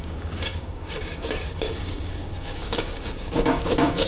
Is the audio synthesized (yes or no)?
yes